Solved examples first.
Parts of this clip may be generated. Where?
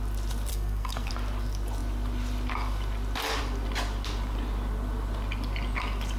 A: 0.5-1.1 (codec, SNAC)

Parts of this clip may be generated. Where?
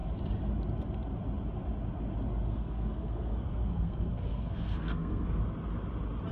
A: 2.5-5.4 (codec, SNAC)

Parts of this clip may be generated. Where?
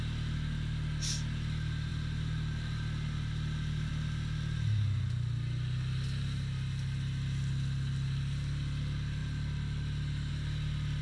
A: none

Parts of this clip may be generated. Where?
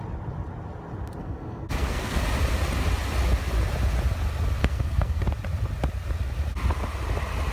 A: 1.2-2.2 (codec, SNAC); 4.6-5.2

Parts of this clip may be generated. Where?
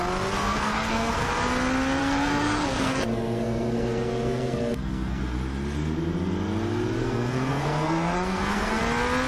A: 0.4-1.3 (codec, SNAC); 2.0-5.2; 7.0-8.8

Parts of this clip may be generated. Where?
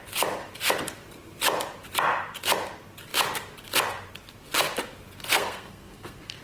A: 5.3-6.4 (codec, SNAC)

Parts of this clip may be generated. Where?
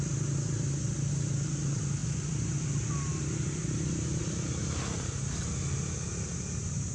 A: none